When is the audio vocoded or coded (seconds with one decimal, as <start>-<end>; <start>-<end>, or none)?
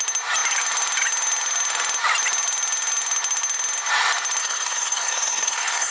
4.4-5.9